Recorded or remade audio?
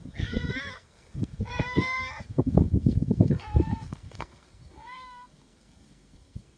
remade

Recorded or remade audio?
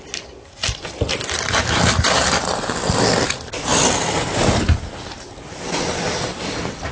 recorded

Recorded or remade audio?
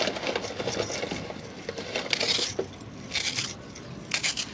recorded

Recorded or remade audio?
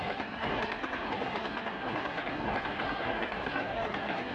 remade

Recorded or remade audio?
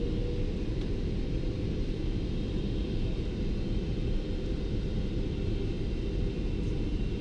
recorded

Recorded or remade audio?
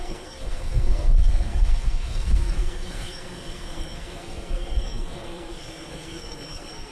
remade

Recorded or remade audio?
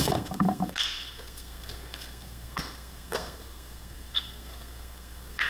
remade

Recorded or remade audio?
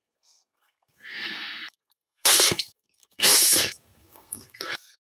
remade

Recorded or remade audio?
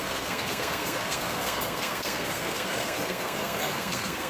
remade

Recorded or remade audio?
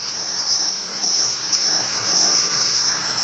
remade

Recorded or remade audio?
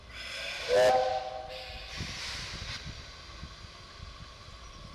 recorded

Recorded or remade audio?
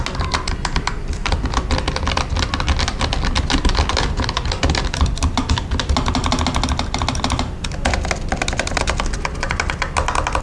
recorded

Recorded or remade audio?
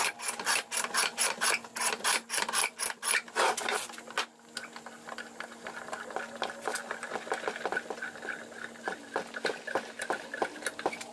recorded